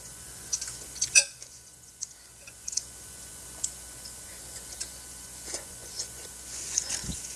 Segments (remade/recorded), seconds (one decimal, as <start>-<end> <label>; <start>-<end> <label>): 0.0-7.4 remade